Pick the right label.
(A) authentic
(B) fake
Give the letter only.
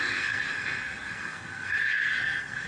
B